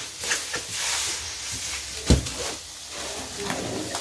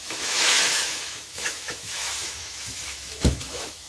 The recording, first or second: first